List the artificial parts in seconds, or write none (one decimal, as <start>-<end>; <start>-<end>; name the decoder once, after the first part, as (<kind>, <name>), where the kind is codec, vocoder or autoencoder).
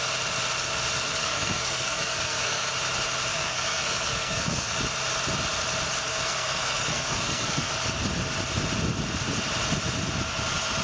1.2-2.7 (codec, SNAC); 3.3-4.8; 6.1-7.7